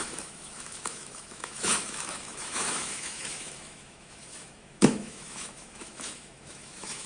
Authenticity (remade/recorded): remade